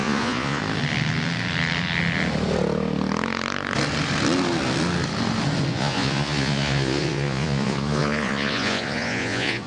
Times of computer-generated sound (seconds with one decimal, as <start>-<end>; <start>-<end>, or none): 0.0-0.6; 5.7-9.7